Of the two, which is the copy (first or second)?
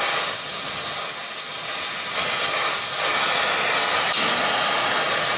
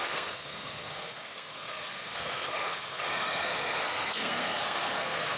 second